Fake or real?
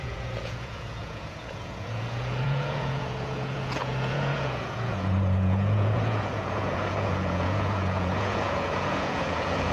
fake